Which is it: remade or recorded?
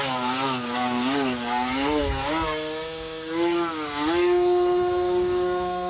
remade